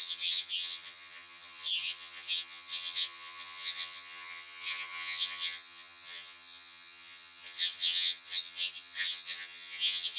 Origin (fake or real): fake